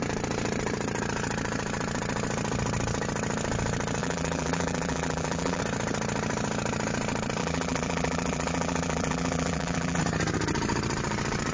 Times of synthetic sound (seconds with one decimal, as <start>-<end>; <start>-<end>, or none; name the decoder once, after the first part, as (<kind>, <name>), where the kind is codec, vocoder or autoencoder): 4.0-5.6 (vocoder, BigVGAN v2); 7.4-10.0